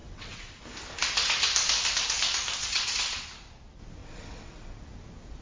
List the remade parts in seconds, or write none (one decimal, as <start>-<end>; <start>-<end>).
0.0-0.6; 2.6-3.2; 4.0-4.7